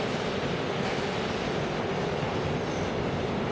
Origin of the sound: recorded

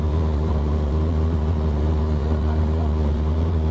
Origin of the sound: remade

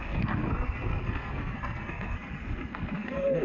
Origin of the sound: remade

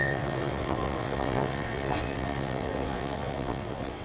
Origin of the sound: remade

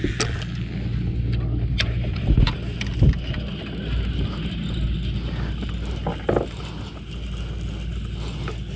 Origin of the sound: recorded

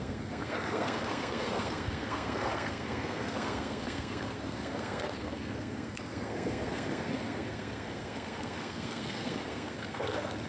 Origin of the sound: remade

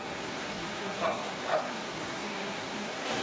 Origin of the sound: remade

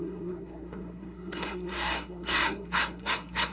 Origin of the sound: remade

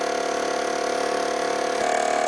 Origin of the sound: recorded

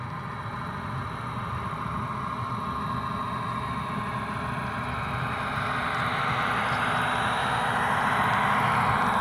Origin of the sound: recorded